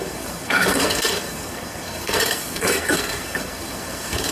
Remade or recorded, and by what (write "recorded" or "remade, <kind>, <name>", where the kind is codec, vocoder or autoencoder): remade, codec, SNAC